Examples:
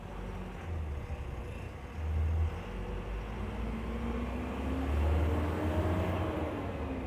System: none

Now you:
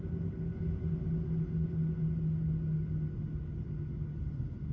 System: none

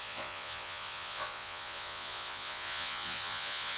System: vocoder, Vocos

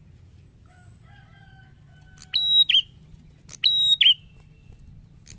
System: none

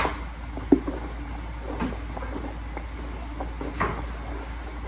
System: none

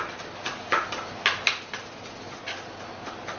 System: none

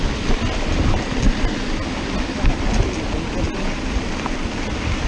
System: none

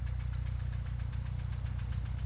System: none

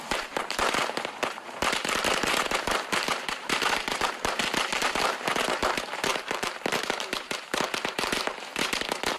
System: vocoder, BigVGAN v2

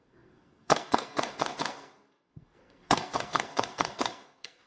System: codec, SNAC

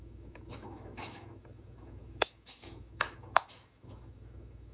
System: autoencoder, DAC-VAE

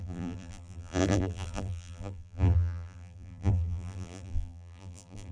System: vocoder, BigVGAN v2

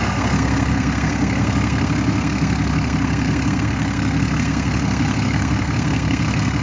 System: codec, SNAC